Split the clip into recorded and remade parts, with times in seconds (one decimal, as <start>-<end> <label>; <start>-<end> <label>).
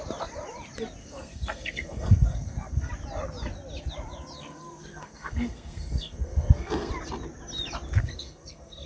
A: 0.0-1.0 recorded; 1.0-2.9 remade; 2.9-4.4 recorded; 4.4-6.9 remade; 6.9-8.0 recorded; 8.0-8.9 remade